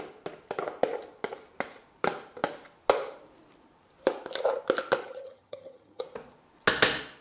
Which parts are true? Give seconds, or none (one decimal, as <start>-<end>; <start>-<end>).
0.0-5.0; 6.0-7.2